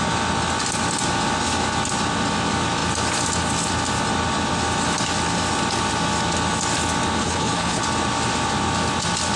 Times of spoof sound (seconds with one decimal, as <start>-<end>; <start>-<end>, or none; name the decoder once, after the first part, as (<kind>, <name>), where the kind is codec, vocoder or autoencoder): 7.2-7.8 (codec, HILCodec)